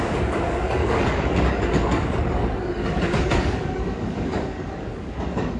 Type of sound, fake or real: fake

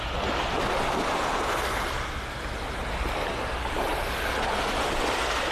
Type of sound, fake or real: real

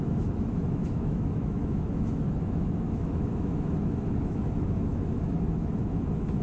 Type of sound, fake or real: fake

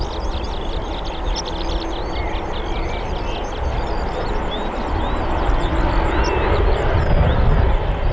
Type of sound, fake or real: real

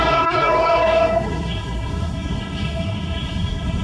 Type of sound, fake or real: fake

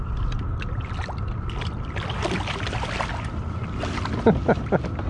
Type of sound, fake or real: real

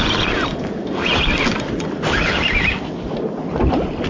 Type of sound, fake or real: real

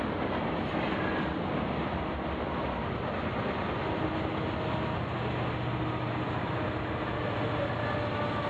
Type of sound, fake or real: real